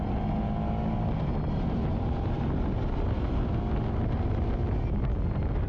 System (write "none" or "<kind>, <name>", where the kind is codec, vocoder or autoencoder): none